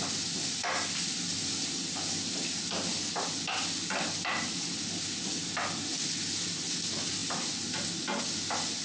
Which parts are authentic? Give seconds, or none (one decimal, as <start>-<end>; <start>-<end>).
0.0-8.8